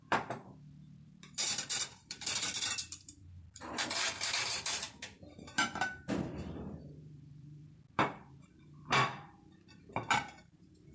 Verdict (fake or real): fake